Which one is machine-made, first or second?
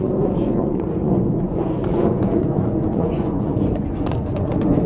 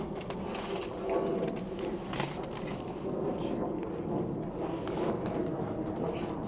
first